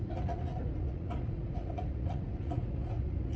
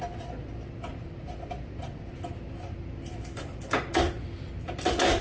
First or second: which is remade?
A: first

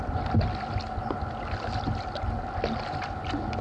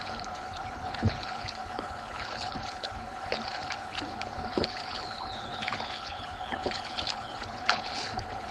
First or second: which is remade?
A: second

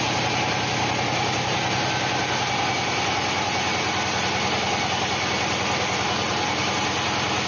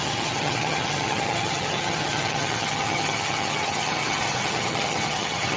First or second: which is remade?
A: second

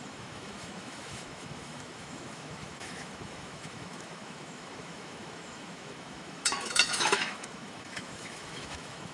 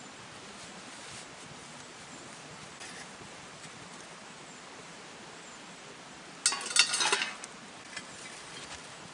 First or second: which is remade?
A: first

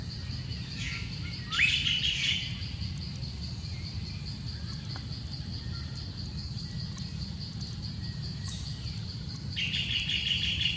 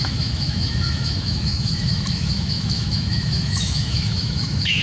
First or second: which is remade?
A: second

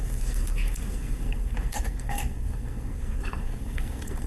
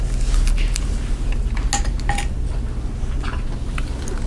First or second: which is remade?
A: first